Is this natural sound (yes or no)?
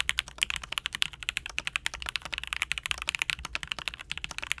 yes